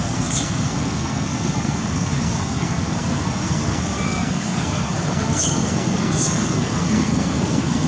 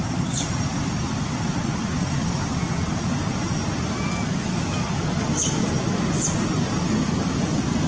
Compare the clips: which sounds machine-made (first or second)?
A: first